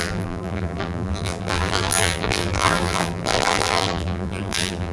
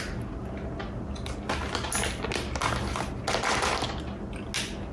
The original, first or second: second